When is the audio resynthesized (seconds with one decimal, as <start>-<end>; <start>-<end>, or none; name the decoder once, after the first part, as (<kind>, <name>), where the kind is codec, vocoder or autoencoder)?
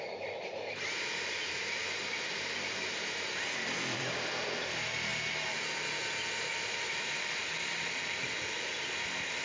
0.0-5.1 (vocoder, BigVGAN v2); 6.5-7.4; 8.6-9.4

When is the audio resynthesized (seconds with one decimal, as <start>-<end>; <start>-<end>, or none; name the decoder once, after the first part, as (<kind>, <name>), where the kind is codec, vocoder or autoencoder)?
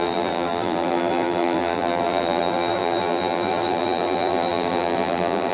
0.0-5.5 (vocoder, BigVGAN v2)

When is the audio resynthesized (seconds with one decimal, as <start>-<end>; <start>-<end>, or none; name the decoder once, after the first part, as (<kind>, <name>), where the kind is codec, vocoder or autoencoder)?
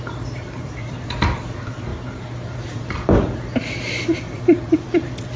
0.0-1.9 (vocoder, BigVGAN v2); 2.8-5.4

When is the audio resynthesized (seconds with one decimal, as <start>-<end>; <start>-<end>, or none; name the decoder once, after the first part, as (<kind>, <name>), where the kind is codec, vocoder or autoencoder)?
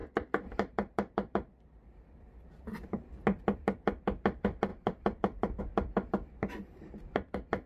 0.0-2.9 (vocoder, BigVGAN v2); 4.7-5.6